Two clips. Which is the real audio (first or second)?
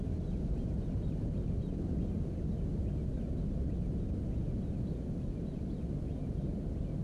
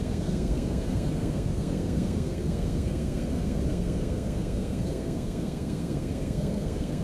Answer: first